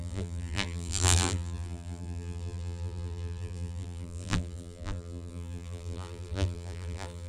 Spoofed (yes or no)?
yes